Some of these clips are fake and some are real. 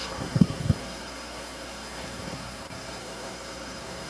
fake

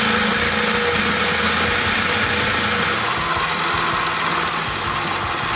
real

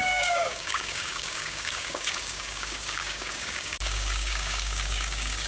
fake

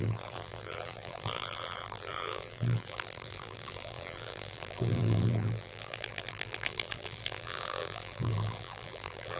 fake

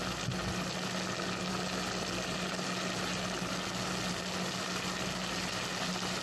real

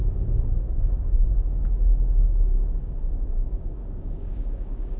fake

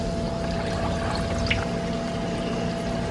real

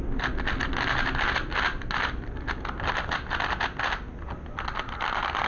real